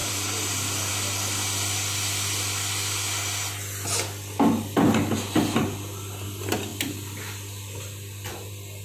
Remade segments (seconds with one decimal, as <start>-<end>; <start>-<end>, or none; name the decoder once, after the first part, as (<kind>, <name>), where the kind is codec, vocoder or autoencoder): 0.0-0.9 (vocoder, BigVGAN v2)